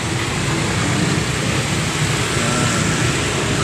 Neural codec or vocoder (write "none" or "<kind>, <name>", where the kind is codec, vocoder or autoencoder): none